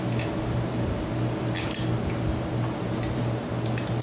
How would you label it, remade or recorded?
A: recorded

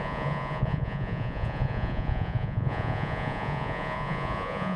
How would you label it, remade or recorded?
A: remade